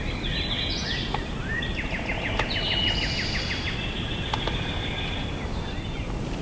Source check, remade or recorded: recorded